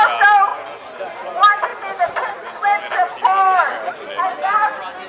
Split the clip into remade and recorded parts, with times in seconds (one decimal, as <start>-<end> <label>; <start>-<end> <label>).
0.0-5.1 recorded